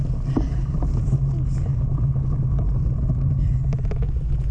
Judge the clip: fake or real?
real